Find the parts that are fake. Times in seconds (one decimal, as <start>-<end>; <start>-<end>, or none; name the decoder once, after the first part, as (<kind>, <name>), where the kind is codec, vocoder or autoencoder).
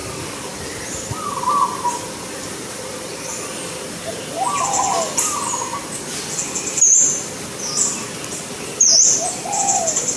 none